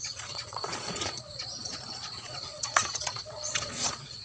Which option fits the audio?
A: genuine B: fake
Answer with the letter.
B